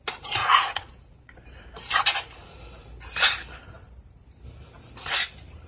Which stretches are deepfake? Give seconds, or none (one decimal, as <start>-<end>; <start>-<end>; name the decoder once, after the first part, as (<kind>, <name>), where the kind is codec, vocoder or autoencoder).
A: 0.4-1.4 (vocoder, Vocos)